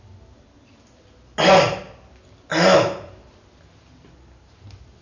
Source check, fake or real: real